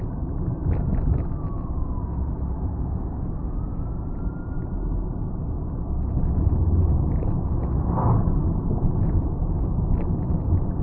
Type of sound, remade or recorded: recorded